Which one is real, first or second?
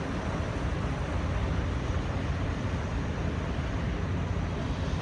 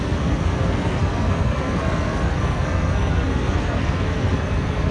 first